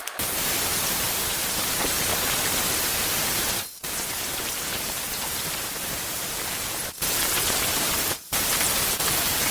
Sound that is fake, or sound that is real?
fake